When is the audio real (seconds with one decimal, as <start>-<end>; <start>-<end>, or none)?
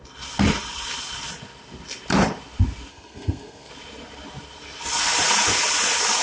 0.0-2.9; 3.7-6.2